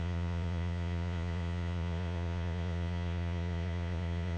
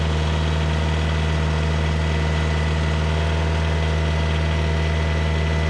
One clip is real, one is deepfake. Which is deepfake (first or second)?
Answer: first